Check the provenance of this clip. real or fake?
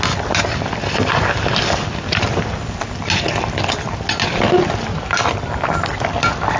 real